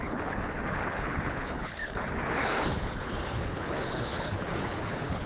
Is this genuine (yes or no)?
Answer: no